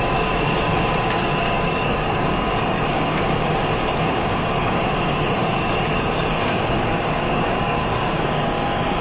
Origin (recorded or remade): remade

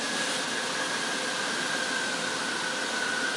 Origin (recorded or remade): recorded